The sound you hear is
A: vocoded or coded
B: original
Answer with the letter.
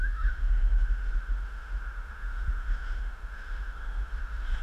A